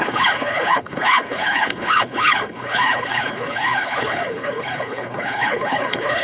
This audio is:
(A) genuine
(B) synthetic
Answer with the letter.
B